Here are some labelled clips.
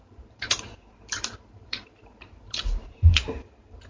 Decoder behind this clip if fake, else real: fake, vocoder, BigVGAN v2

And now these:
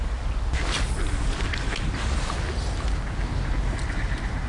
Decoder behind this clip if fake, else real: real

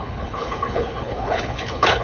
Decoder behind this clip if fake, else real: fake, codec, HILCodec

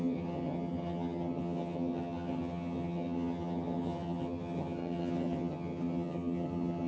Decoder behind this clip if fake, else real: fake, vocoder, HiFi-GAN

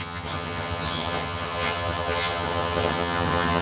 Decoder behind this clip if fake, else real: fake, vocoder, HiFi-GAN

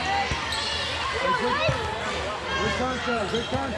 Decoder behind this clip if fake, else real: real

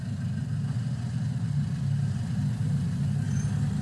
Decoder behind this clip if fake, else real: real